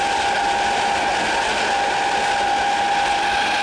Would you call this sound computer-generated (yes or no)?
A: no